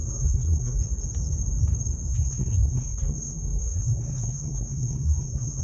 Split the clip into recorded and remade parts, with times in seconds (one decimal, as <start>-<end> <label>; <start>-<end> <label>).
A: 0.0-0.8 remade; 0.8-2.1 recorded; 2.1-5.6 remade